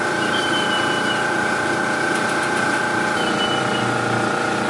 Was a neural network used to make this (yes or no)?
no